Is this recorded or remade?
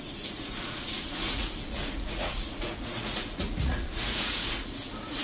remade